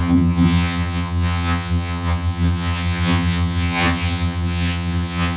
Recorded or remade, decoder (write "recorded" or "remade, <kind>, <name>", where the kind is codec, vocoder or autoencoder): remade, vocoder, HiFi-GAN